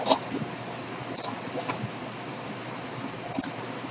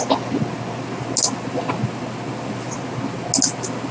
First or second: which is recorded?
second